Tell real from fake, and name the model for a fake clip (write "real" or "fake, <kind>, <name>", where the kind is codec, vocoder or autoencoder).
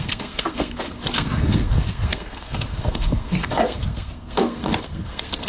fake, codec, SNAC